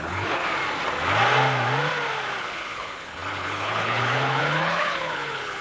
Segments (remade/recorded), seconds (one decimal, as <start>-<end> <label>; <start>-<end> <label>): 0.0-0.4 remade; 0.4-2.4 recorded; 2.4-5.6 remade